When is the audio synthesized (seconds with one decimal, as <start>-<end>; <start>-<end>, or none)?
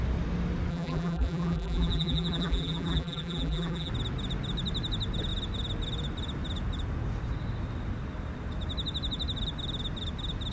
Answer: 0.7-3.9